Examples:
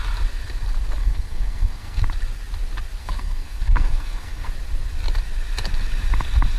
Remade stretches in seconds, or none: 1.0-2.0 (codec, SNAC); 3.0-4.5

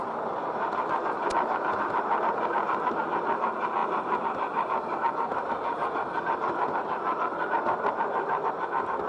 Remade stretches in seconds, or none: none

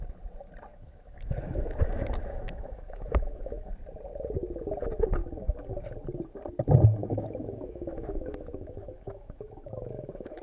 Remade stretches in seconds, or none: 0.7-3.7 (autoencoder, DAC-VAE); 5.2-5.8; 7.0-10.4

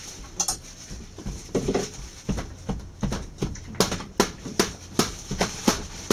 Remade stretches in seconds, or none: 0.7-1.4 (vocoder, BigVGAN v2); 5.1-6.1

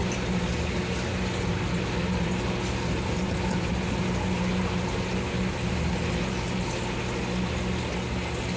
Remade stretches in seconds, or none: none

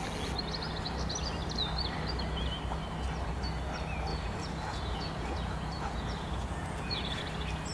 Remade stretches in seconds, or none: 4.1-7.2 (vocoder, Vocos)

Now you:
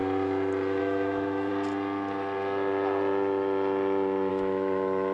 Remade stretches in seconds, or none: 0.8-1.5 (autoencoder, DAC-VAE); 4.3-5.1